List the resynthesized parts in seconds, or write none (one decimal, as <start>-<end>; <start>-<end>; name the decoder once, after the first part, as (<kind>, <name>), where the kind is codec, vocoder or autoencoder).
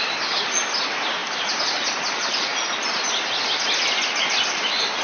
none